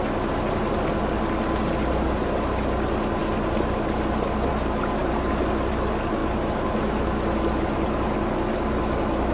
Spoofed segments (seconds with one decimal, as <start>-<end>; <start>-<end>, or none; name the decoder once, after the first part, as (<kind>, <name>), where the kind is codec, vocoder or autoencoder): none